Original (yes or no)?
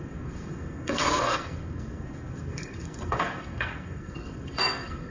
no